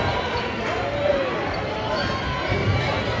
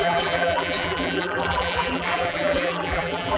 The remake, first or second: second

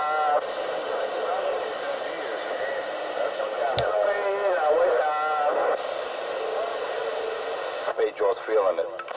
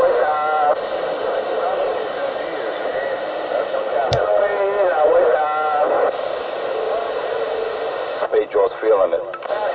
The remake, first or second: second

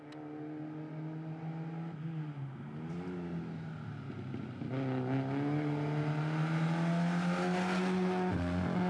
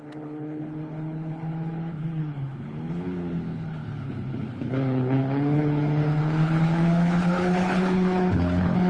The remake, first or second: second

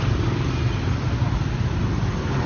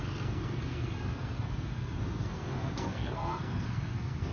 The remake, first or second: second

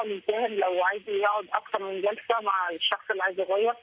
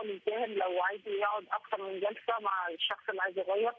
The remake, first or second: first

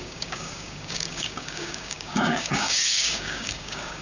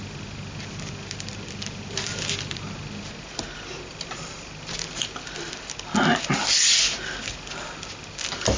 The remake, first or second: first